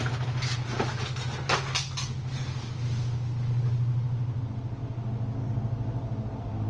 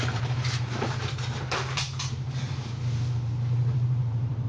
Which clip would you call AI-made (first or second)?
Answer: second